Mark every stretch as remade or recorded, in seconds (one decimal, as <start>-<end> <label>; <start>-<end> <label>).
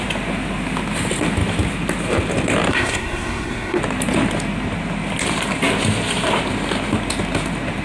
0.0-2.7 recorded; 2.7-3.8 remade; 3.8-7.8 recorded